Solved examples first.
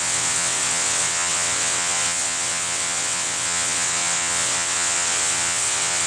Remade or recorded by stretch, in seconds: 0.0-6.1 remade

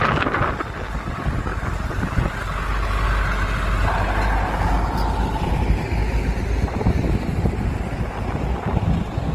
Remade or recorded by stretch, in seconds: 0.0-9.3 recorded